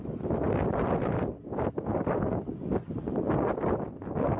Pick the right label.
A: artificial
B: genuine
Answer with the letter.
B